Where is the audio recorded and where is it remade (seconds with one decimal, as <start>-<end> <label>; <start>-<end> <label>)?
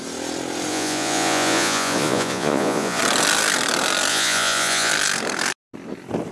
0.0-0.7 recorded; 0.7-3.0 remade; 3.0-4.1 recorded; 4.1-4.9 remade; 4.9-6.3 recorded